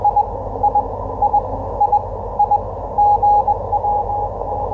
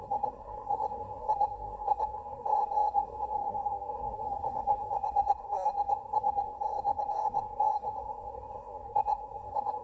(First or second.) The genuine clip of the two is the first